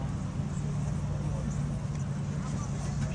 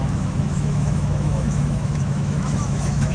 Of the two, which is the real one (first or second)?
first